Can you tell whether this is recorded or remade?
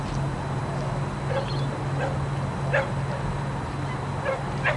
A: recorded